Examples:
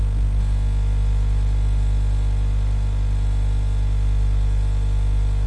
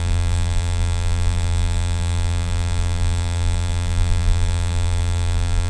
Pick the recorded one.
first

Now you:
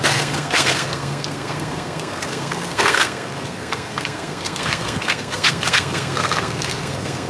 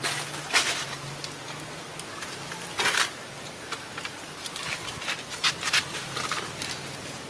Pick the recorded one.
second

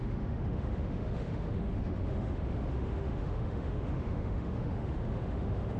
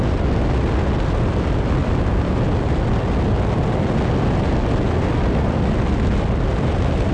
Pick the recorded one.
second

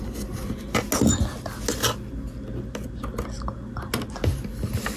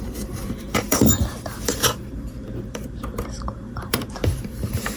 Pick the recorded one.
first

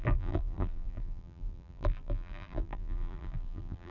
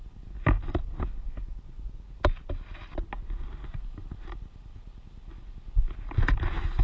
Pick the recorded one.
second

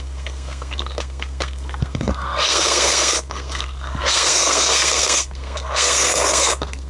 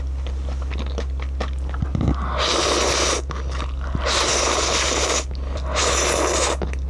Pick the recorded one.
second